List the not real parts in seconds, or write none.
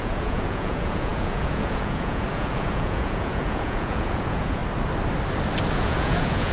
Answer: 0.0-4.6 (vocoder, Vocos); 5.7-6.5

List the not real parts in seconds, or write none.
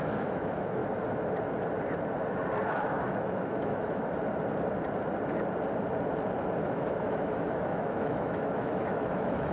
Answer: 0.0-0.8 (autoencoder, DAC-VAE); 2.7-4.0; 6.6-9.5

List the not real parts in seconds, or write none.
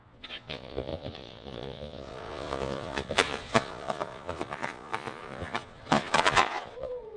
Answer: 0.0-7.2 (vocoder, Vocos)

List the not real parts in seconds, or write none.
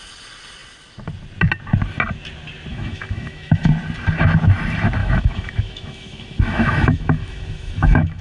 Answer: 2.7-3.7 (autoencoder, DAC-VAE); 5.0-8.2